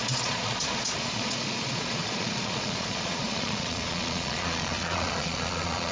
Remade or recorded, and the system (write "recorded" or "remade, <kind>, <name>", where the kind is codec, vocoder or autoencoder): remade, vocoder, Vocos